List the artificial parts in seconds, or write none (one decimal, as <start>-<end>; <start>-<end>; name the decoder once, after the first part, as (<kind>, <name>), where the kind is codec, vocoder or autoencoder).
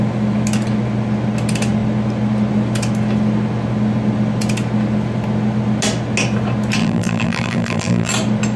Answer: 6.8-8.1 (vocoder, BigVGAN v2)